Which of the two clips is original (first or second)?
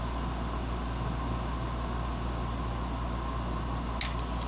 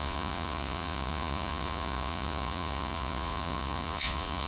first